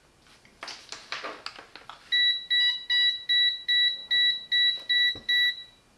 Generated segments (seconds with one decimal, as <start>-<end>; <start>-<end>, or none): none